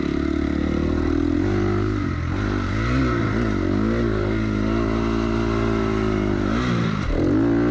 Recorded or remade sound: recorded